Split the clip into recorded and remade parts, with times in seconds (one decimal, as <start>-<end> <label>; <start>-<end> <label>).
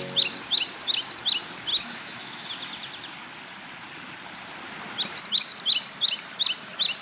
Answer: 0.0-1.7 recorded; 1.7-2.5 remade; 2.5-7.0 recorded